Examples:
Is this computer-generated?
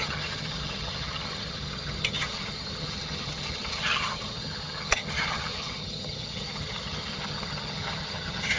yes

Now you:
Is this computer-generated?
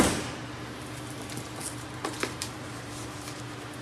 yes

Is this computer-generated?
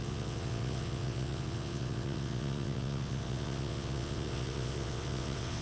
yes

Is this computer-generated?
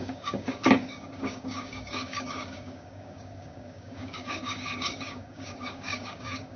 yes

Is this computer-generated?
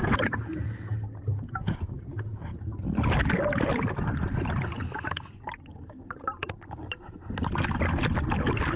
no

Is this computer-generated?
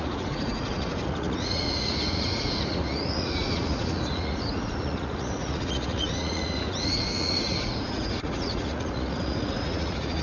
yes